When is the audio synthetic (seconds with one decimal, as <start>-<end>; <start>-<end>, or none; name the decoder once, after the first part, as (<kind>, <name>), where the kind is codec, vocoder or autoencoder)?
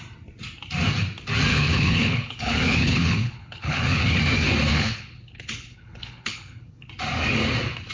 1.5-4.2 (codec, HILCodec); 4.7-6.9